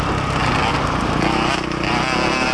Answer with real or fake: real